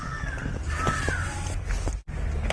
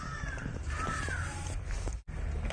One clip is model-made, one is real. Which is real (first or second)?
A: first